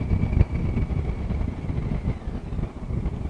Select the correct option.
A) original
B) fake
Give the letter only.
A